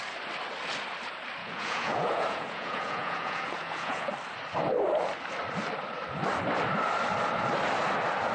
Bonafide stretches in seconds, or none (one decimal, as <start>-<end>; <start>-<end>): 0.0-1.4; 4.1-8.3